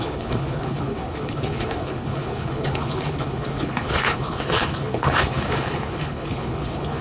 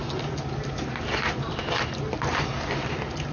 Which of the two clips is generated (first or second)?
first